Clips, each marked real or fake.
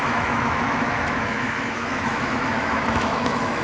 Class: fake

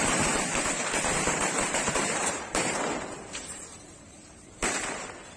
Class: fake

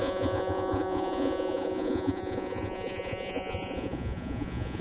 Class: fake